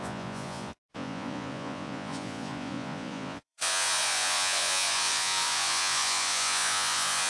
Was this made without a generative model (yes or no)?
no